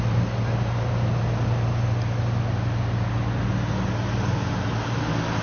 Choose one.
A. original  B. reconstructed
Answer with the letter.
A